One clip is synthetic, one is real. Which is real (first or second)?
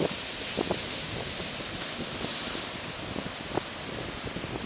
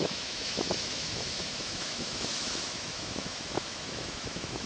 first